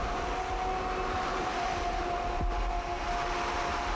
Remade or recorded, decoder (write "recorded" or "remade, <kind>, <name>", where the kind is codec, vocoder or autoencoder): recorded